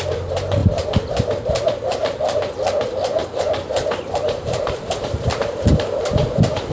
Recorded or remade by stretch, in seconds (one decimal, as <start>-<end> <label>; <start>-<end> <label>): 0.0-0.6 remade; 0.6-3.4 recorded; 3.4-6.7 remade